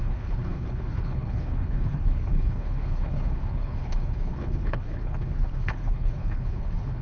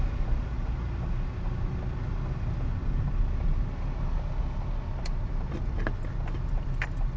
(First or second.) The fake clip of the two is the first